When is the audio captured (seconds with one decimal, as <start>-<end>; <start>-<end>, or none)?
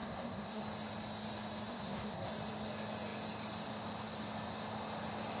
0.6-1.7; 2.3-5.4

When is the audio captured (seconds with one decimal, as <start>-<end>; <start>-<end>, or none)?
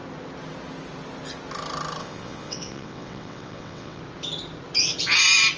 0.0-2.0; 4.0-5.6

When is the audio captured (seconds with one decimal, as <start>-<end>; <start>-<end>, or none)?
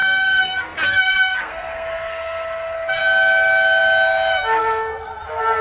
3.0-5.6